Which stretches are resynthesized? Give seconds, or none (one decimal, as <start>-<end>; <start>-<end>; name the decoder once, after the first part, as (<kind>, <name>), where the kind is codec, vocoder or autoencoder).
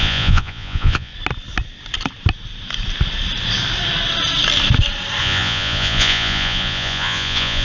0.0-1.1 (vocoder, Vocos); 5.2-7.6